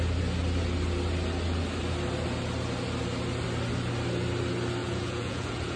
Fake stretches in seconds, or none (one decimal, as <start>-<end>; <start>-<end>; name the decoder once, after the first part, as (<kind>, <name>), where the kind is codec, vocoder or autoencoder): 4.8-5.8 (vocoder, Vocos)